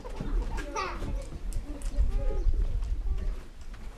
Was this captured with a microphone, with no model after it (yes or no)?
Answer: yes